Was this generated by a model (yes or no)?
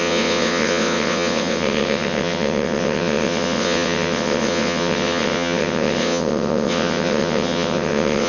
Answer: yes